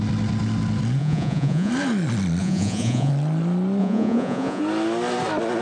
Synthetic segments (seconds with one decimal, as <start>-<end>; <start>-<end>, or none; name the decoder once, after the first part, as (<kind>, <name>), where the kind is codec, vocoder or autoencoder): 1.0-1.7 (vocoder, Vocos); 2.4-3.1; 3.8-4.6